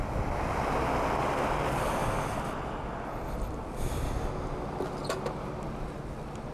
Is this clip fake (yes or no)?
no